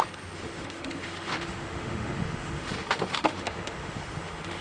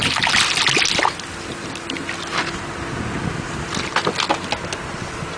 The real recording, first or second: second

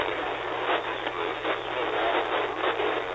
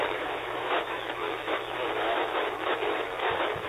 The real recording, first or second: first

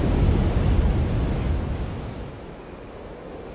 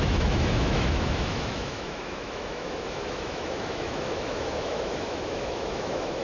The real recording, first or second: first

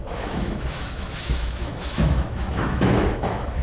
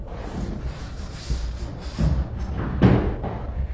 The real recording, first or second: second